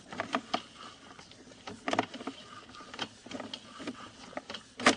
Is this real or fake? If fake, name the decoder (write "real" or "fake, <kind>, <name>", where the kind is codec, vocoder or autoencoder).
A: real